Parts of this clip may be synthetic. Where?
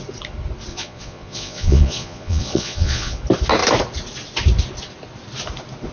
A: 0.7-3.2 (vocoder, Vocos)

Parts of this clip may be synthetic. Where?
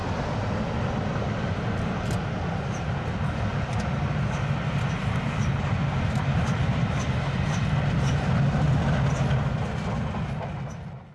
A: none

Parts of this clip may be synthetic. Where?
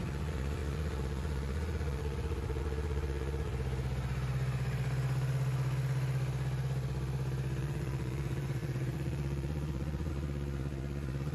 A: 0.0-3.5 (vocoder, Vocos); 7.6-11.3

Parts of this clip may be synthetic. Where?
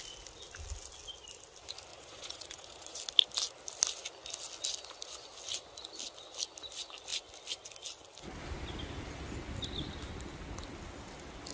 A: 1.9-3.0 (vocoder, Vocos)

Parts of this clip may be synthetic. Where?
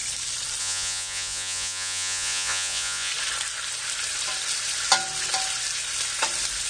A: 0.6-3.1 (vocoder, Vocos)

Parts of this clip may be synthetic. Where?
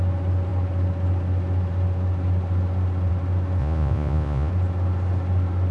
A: 3.6-4.5 (vocoder, Vocos)